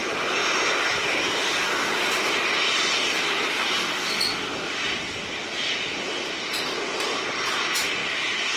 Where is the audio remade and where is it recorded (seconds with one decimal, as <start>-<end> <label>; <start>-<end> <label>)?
0.0-8.6 recorded

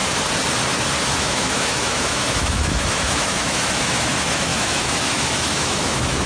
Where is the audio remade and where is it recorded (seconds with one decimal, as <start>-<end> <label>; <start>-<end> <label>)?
0.0-1.2 recorded; 1.2-6.3 remade

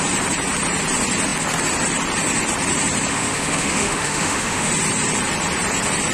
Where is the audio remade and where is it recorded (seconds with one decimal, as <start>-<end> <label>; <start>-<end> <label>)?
0.0-3.1 recorded; 3.1-4.7 remade; 4.7-6.1 recorded

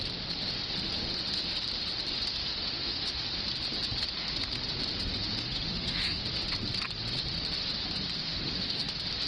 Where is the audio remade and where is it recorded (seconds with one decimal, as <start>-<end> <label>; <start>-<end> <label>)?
0.0-2.4 recorded; 2.4-3.2 remade; 3.2-5.4 recorded; 5.4-6.2 remade; 6.2-8.2 recorded; 8.2-8.9 remade; 8.9-9.3 recorded

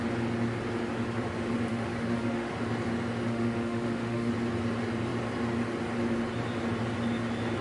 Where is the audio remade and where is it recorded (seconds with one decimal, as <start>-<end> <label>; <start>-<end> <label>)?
0.0-1.7 recorded; 1.7-2.5 remade; 2.5-3.3 recorded; 3.3-4.3 remade; 4.3-7.6 recorded